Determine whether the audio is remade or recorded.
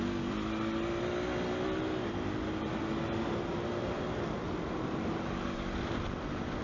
recorded